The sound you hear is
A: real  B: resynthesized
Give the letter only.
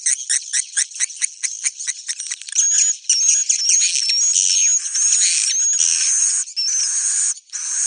A